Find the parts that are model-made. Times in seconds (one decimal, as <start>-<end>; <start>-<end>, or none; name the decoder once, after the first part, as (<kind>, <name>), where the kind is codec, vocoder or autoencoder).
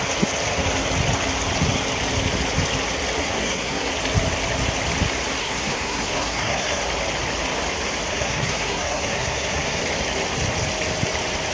3.2-3.9 (codec, SNAC); 5.4-6.8; 8.1-9.8